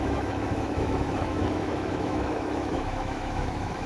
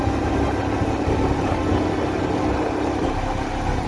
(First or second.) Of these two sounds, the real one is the second